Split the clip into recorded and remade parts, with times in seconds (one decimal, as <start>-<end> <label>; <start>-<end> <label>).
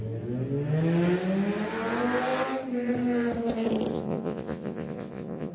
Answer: 0.0-3.9 recorded; 3.9-5.5 remade